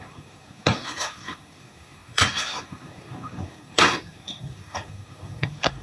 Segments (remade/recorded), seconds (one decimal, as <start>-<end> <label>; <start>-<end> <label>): 0.0-5.8 remade